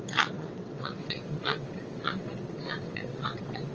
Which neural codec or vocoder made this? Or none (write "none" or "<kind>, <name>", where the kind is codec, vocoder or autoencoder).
vocoder, WaveNeXt